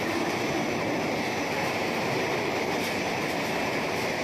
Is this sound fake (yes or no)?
yes